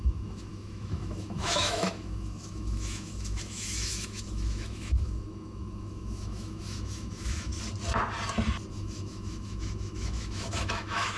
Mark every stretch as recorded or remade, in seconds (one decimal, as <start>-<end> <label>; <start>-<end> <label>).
0.0-7.5 remade; 7.5-8.7 recorded; 8.7-11.2 remade